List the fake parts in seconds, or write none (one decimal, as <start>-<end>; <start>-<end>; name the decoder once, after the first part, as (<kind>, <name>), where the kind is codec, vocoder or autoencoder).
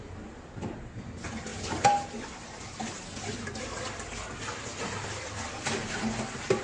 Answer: 1.5-3.5 (vocoder, BigVGAN v2)